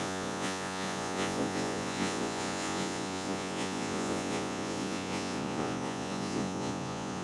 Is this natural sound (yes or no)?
no